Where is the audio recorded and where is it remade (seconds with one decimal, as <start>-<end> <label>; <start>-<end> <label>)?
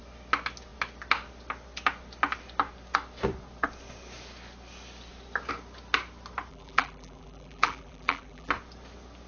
0.0-6.5 recorded; 6.5-8.5 remade; 8.5-9.3 recorded